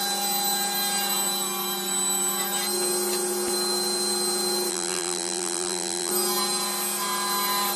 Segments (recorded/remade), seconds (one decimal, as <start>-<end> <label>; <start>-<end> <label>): 0.0-4.7 recorded; 4.7-6.1 remade; 6.1-7.8 recorded